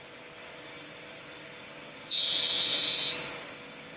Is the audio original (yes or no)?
no